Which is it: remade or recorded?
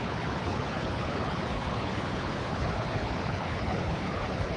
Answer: remade